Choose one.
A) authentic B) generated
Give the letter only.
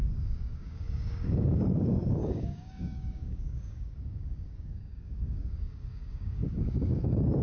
B